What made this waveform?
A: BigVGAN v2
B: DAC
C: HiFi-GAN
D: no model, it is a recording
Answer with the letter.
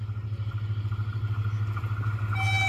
D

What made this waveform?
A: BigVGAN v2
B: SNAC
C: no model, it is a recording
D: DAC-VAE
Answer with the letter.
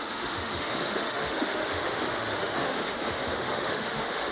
D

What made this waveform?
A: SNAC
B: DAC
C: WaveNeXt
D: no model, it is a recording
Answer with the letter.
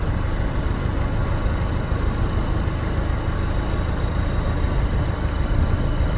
D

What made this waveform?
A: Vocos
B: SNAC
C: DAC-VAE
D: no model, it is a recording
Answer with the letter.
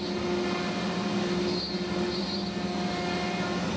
D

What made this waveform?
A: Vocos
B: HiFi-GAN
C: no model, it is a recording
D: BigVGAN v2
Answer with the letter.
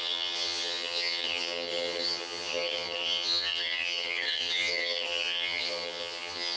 B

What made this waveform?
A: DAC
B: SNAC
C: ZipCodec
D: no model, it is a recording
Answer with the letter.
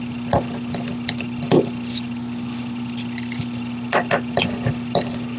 D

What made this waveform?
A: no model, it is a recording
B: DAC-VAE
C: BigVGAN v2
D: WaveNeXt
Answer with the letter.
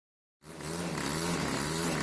A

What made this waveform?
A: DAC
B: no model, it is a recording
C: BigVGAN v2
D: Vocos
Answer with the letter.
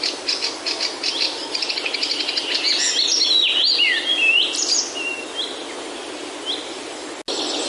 B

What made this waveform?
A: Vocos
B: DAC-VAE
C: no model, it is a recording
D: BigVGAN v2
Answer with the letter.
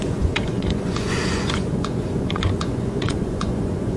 A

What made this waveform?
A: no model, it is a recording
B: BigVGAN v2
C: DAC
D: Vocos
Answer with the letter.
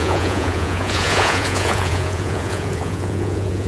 D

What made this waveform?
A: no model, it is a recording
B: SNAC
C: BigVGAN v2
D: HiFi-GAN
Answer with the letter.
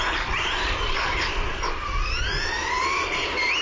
C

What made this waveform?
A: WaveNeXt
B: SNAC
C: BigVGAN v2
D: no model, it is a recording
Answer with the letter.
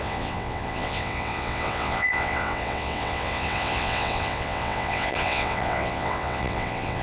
A